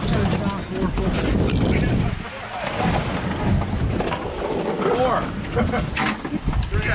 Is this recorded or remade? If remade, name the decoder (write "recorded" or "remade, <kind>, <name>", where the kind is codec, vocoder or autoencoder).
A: recorded